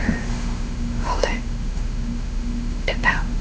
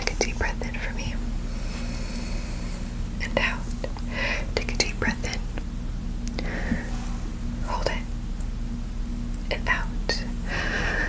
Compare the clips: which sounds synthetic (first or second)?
first